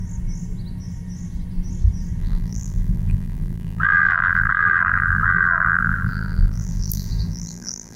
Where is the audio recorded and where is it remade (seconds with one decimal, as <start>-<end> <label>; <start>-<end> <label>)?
0.0-2.2 recorded; 2.2-8.0 remade